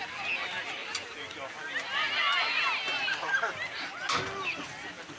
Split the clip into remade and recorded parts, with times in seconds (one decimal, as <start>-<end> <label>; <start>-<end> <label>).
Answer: 0.0-5.2 recorded

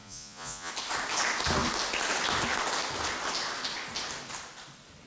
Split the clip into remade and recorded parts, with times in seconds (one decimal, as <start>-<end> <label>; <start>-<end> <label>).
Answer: 0.0-0.7 remade; 0.7-5.1 recorded

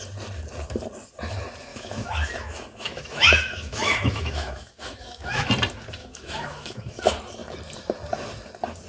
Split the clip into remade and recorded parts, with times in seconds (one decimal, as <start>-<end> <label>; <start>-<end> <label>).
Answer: 0.0-1.7 recorded; 1.7-5.5 remade; 5.5-6.0 recorded; 6.0-7.0 remade; 7.0-8.9 recorded

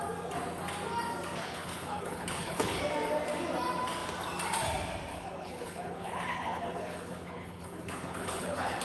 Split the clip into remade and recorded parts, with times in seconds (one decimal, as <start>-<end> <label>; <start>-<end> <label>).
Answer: 0.0-1.4 recorded; 1.4-2.8 remade; 2.8-5.1 recorded; 5.1-8.8 remade